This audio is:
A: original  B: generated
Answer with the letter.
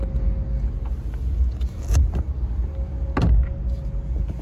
A